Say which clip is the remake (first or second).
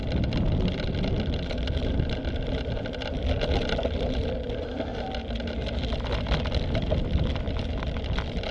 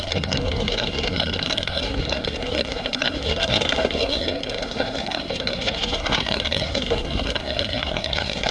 second